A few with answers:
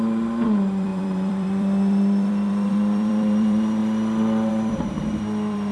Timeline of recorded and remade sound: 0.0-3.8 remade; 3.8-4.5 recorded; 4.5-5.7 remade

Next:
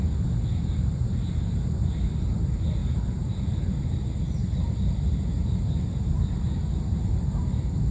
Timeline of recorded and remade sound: 0.0-2.8 recorded; 2.8-3.7 remade; 3.7-4.4 recorded; 4.4-7.2 remade; 7.2-7.9 recorded